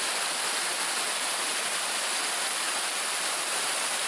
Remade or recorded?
recorded